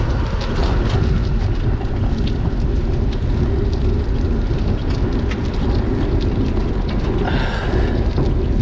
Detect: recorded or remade recorded